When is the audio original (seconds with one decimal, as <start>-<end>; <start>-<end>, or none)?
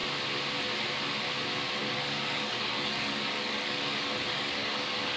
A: 0.0-1.8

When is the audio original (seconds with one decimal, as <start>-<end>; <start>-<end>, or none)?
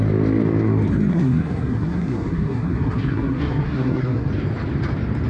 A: 0.0-1.1; 4.3-5.3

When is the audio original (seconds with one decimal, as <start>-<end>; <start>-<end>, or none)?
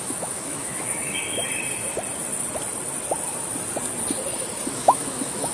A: 1.4-4.7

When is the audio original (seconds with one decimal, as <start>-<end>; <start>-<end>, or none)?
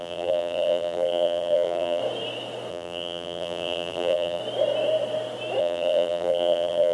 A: 2.0-2.7; 4.4-5.6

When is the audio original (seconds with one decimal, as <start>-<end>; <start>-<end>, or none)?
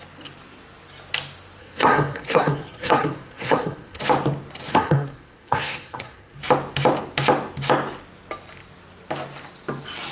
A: 0.0-1.6; 4.0-4.7; 6.4-10.1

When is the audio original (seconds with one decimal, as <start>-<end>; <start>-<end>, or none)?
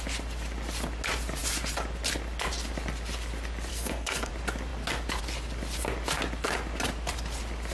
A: 0.0-3.7; 4.3-7.7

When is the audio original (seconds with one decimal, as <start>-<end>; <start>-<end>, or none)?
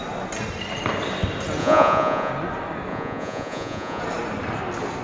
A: 0.0-1.6; 2.3-2.9; 4.0-5.0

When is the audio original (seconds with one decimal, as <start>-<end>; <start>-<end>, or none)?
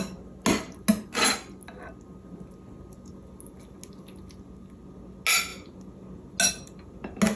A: 0.0-7.4